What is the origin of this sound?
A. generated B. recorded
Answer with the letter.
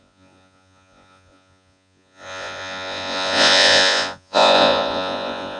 A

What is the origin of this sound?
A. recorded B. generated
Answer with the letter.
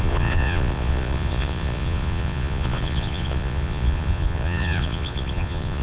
B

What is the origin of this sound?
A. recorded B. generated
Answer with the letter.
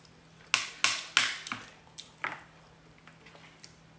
A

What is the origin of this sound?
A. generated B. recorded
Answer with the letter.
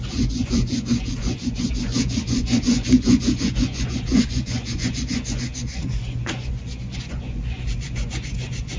A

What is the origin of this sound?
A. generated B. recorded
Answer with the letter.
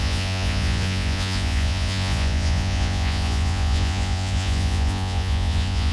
A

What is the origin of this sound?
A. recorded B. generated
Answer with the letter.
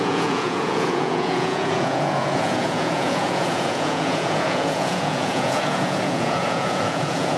B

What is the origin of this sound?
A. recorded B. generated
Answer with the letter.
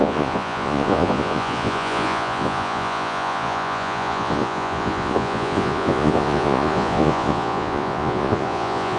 B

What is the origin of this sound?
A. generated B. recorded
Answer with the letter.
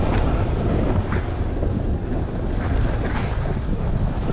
B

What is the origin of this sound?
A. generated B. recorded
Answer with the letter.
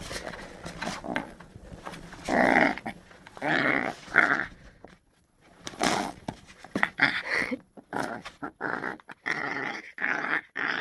A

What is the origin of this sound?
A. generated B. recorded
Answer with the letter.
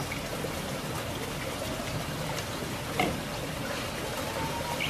B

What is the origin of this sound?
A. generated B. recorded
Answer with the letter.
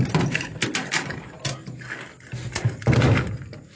B